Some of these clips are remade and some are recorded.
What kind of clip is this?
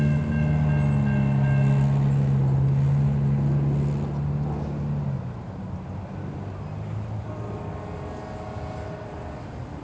recorded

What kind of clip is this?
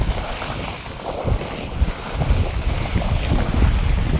recorded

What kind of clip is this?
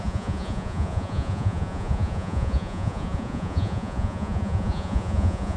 remade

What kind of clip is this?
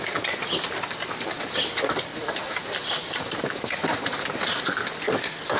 recorded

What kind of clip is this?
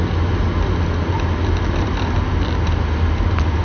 recorded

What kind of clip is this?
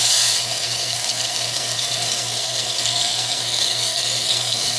remade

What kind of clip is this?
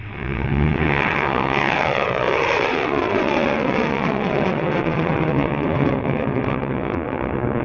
remade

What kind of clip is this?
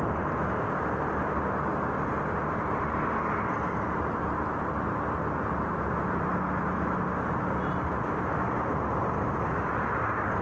recorded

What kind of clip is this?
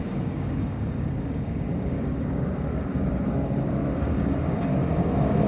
remade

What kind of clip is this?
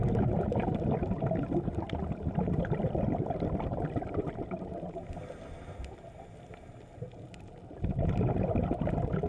recorded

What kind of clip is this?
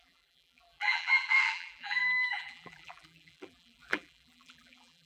remade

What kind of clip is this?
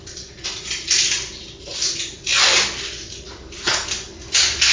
recorded